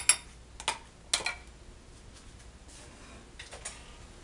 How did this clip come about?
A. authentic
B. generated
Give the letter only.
A